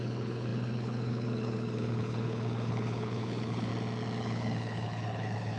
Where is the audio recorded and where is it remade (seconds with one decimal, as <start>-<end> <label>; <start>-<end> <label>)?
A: 0.0-3.7 remade; 3.7-4.2 recorded; 4.2-5.6 remade